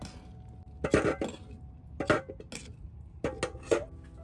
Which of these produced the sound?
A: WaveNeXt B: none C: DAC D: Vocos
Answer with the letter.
B